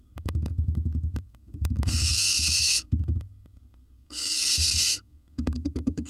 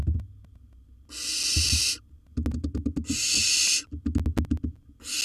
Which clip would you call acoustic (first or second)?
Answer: second